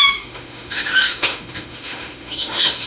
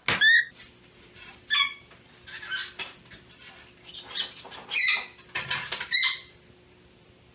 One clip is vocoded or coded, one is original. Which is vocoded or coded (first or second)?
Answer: first